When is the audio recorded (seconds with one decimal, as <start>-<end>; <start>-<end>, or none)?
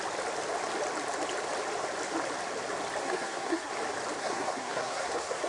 0.0-3.0; 3.7-4.2